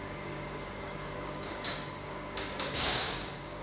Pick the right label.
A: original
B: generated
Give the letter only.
B